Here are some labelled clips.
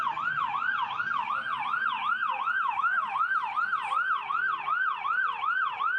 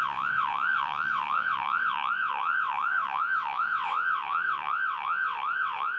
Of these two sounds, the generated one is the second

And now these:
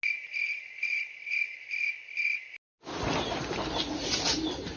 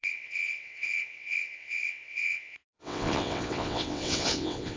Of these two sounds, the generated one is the second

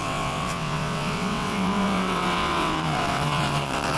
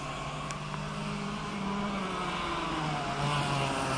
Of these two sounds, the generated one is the first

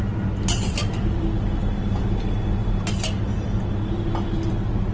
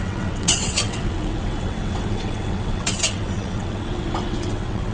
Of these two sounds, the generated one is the second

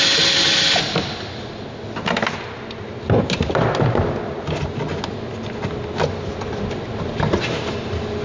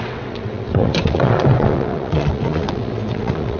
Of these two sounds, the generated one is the second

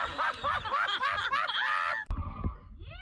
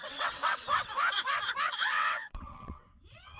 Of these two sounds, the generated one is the second